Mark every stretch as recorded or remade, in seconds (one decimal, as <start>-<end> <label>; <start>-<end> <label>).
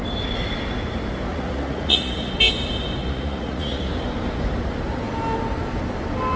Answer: 0.0-1.3 recorded; 1.3-2.3 remade; 2.3-3.0 recorded; 3.0-3.9 remade; 3.9-6.4 recorded